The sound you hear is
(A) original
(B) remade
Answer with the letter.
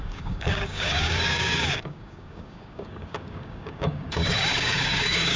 B